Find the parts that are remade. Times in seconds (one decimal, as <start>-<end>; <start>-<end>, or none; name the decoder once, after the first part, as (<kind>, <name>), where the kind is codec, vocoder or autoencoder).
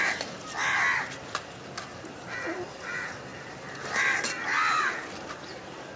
none